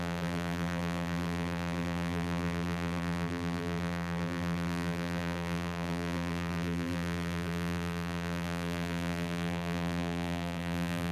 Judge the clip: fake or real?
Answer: fake